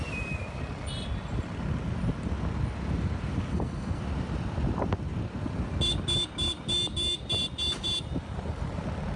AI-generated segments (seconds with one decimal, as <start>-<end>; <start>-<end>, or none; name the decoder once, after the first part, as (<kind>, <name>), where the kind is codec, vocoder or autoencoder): 3.5-4.0 (codec, SNAC)